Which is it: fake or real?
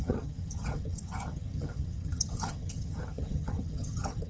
fake